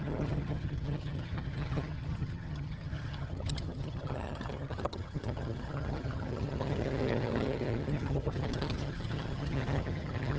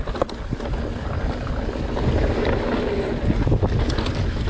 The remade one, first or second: first